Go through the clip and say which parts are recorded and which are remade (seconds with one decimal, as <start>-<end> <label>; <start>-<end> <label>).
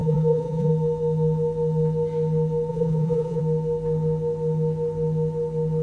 0.0-0.7 remade; 0.7-2.7 recorded; 2.7-3.4 remade; 3.4-5.8 recorded